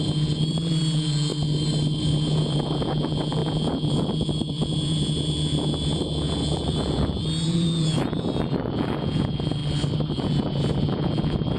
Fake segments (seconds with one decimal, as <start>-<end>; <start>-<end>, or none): 0.0-1.3; 2.0-9.6; 10.1-11.6